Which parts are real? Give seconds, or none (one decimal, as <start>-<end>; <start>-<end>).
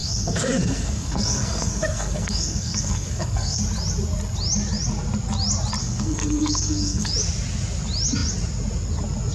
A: 3.6-5.8; 7.1-9.3